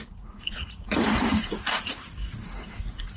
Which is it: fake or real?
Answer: fake